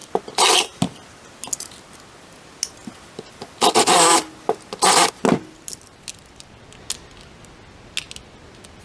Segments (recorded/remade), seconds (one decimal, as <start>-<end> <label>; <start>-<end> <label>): 0.0-8.8 recorded